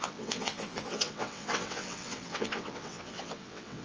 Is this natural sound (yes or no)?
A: no